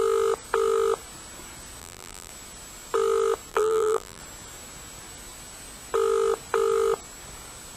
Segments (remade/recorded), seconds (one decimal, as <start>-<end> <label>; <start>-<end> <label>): 0.0-1.8 recorded; 1.8-2.3 remade; 2.3-3.5 recorded; 3.5-4.2 remade; 4.2-7.8 recorded